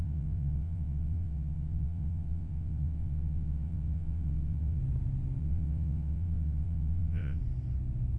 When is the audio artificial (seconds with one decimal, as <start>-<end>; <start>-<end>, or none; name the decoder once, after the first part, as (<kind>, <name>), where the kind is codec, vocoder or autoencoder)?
0.0-4.8 (vocoder, WaveNeXt); 5.4-7.4